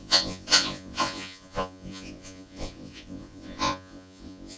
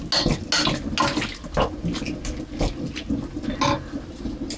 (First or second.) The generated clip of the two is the first